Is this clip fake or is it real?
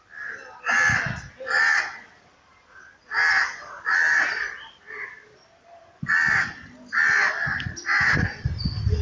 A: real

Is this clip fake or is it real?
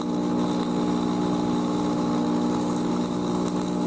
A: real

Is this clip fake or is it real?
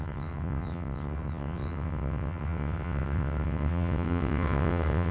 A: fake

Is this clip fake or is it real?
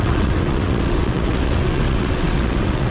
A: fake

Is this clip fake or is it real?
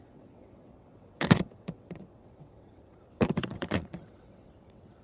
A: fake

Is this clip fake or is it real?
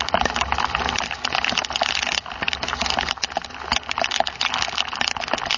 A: real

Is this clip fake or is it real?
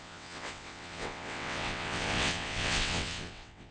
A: fake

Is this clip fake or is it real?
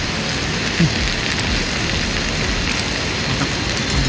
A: real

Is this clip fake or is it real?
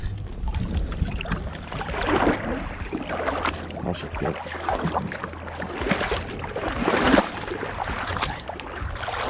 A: real